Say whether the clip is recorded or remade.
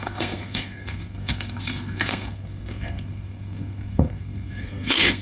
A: remade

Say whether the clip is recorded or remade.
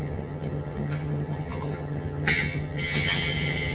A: remade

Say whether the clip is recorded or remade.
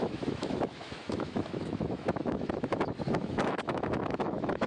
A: remade